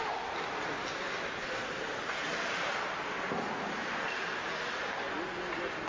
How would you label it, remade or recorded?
recorded